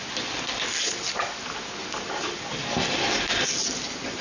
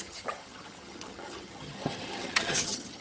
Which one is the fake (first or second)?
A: second